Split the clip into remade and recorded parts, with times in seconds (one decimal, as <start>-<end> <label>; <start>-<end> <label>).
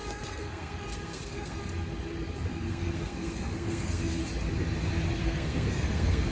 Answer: 0.0-1.6 remade; 1.6-2.5 recorded; 2.5-4.2 remade; 4.2-5.2 recorded; 5.2-6.3 remade